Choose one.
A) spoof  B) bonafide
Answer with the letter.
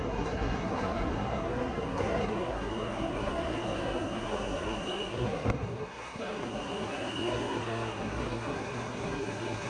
A